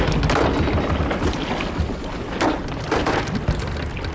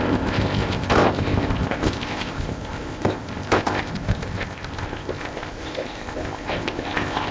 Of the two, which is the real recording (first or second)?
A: first